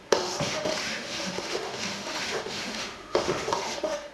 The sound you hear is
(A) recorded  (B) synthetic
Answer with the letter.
B